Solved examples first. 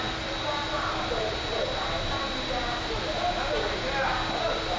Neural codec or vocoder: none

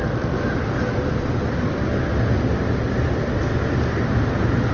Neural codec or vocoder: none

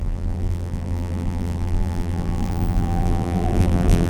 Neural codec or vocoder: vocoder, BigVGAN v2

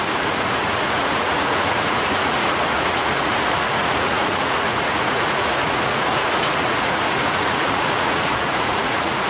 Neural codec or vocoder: vocoder, Vocos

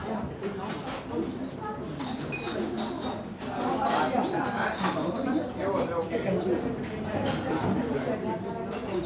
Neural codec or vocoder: none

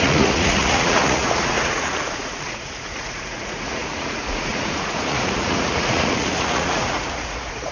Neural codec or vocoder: vocoder, Vocos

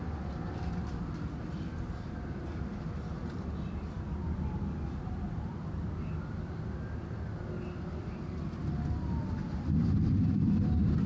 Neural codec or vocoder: none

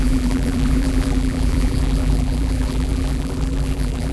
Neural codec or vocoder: vocoder, BigVGAN v2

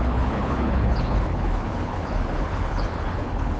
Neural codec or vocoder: codec, HILCodec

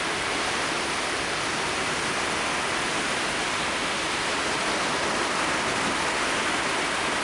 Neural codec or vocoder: none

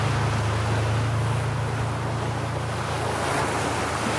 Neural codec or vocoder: none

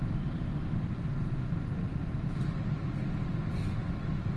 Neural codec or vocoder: none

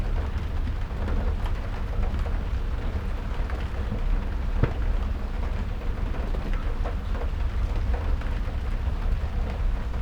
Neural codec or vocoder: none